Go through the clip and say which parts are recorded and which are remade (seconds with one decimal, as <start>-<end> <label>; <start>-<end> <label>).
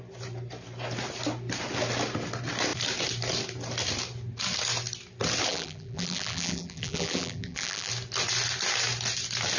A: 0.0-5.5 recorded; 5.5-7.9 remade; 7.9-9.6 recorded